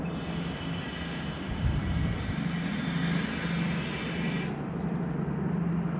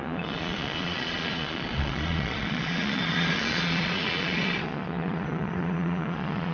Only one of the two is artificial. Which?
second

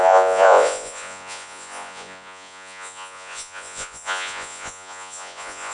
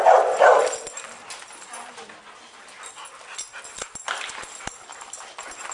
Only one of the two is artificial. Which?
first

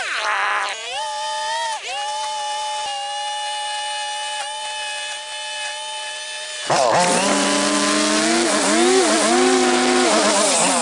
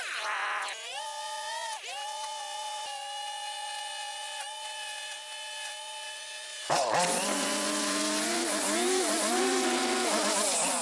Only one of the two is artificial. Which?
second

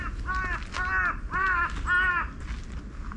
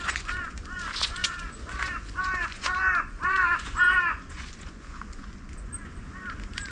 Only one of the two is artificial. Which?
second